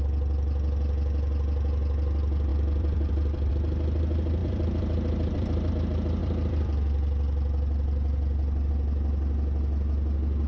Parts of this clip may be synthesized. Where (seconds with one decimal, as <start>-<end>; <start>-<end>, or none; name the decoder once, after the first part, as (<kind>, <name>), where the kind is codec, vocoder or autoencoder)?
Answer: 2.5-3.5 (vocoder, BigVGAN v2); 4.4-5.7; 6.2-8.7